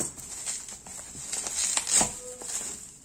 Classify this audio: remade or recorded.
recorded